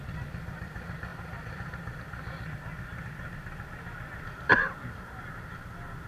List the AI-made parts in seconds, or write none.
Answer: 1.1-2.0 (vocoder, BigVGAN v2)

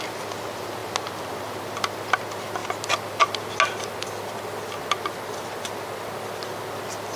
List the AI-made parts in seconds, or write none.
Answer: none

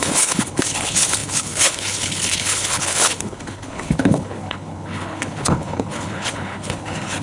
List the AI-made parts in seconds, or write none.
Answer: 0.0-7.2 (codec, HILCodec)

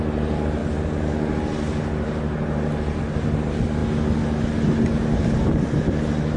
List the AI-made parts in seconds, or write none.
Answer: none

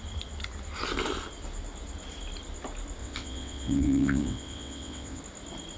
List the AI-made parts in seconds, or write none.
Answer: 3.0-5.2 (vocoder, WaveNeXt)